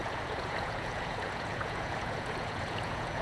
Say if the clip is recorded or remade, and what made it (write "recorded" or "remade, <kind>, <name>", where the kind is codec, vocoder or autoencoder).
remade, vocoder, Vocos